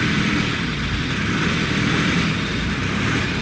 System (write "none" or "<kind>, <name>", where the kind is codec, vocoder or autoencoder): none